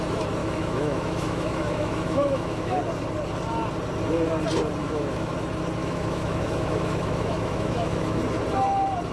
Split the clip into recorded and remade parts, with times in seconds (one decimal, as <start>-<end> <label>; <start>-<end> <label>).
0.0-0.4 recorded; 0.4-2.8 remade; 2.8-4.8 recorded; 4.8-5.3 remade; 5.3-5.8 recorded; 5.8-8.2 remade; 8.2-9.1 recorded